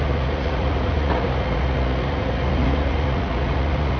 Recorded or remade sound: remade